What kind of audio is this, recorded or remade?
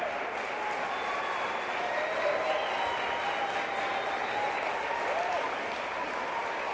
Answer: recorded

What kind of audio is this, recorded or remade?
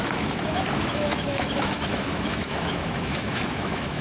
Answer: remade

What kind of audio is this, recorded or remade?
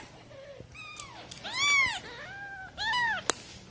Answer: recorded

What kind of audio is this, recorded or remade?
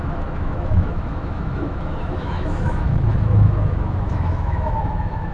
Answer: remade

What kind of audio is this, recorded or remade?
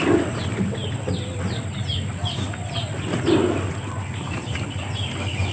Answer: recorded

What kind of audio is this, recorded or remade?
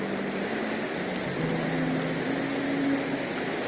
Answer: recorded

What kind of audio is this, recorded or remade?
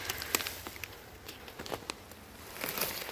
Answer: recorded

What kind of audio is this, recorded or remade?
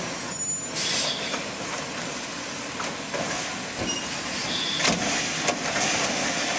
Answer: recorded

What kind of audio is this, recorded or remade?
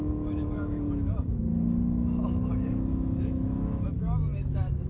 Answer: remade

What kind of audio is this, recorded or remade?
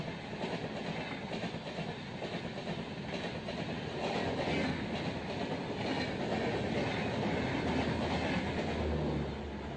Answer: recorded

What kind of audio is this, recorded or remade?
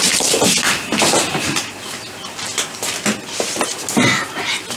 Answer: recorded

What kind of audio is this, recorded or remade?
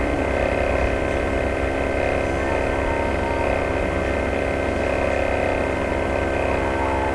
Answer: recorded